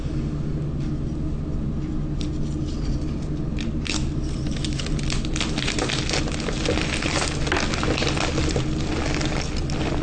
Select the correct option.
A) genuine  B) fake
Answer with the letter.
A